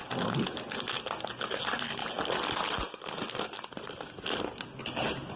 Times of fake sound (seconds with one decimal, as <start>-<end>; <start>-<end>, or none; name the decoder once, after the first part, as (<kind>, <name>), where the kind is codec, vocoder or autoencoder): none